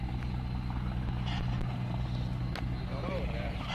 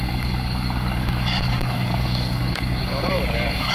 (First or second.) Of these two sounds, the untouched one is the first